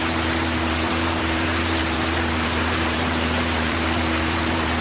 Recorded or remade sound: remade